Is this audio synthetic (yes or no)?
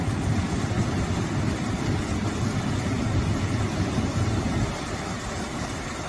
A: no